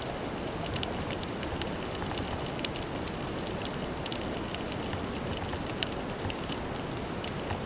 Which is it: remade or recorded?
recorded